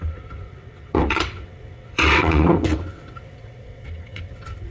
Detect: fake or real fake